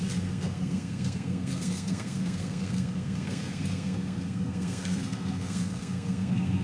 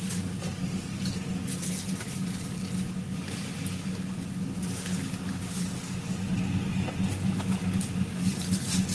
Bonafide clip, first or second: second